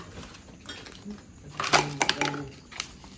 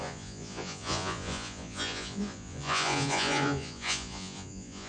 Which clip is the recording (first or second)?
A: first